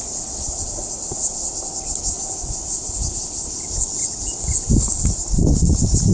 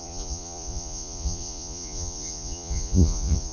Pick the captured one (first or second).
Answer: first